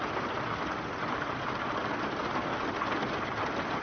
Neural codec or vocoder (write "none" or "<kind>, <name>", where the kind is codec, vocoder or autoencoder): none